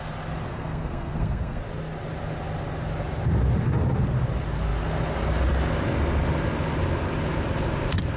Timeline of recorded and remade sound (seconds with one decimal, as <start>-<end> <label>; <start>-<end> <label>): 0.0-0.5 recorded; 0.5-1.6 remade; 1.6-8.2 recorded

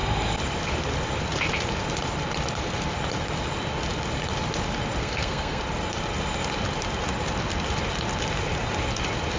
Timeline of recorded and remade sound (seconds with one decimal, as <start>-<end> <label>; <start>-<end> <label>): 0.0-5.0 recorded; 5.0-5.6 remade; 5.6-9.4 recorded

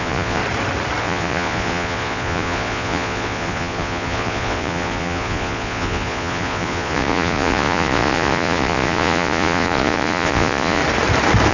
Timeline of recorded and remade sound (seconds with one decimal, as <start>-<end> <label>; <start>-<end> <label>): 0.0-0.4 remade; 0.4-1.0 recorded; 1.0-10.8 remade; 10.8-11.5 recorded

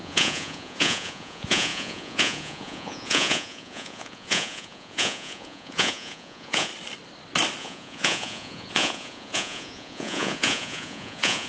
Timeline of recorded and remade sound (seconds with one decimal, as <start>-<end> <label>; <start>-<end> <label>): 0.0-6.7 remade; 6.7-7.6 recorded; 7.6-11.5 remade

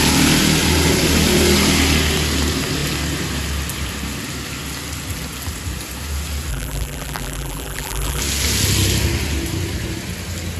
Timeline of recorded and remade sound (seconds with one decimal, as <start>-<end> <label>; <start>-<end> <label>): 0.0-6.5 recorded; 6.5-8.2 remade; 8.2-10.6 recorded